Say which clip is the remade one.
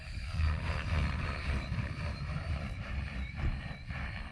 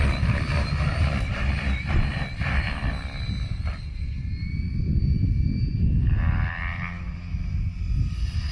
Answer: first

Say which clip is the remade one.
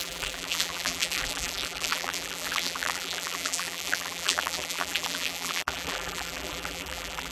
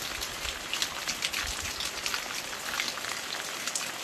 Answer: first